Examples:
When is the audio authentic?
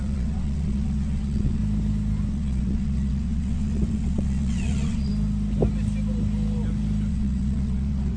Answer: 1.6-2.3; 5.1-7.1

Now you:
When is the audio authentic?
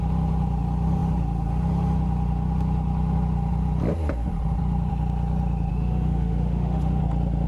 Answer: 0.0-5.7; 7.0-7.5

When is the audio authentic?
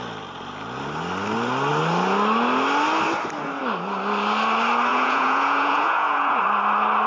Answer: 0.0-4.9; 6.4-7.1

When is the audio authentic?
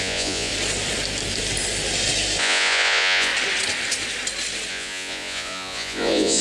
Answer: 0.5-2.4; 3.3-4.7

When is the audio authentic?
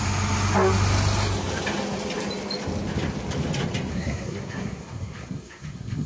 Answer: 0.0-3.9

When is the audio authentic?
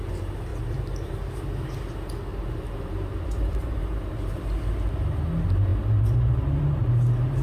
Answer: 0.0-0.5; 1.3-2.3; 4.4-7.4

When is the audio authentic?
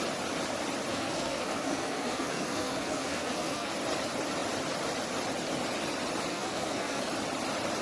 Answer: 0.0-0.9; 3.7-6.3; 7.1-7.8